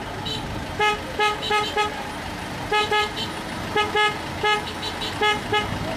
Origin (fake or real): real